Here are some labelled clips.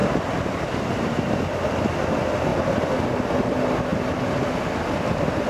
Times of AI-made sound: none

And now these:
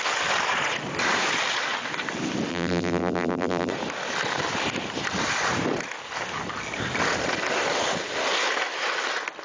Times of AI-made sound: 2.5-3.7

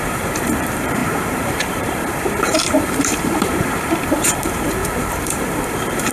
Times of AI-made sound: 0.0-6.1

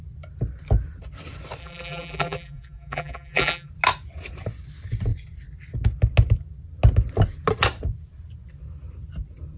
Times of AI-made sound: 1.6-3.7

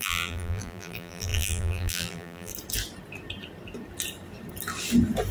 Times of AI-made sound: 0.0-2.5

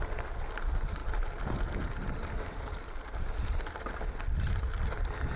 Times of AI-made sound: 1.0-4.2

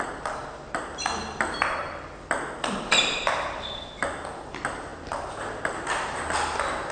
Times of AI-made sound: 0.4-4.5; 4.9-6.9

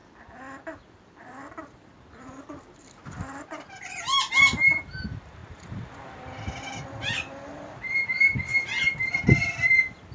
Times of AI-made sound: 0.0-8.5; 9.0-10.1